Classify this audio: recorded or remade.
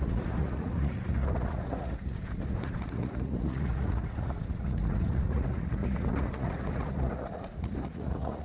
remade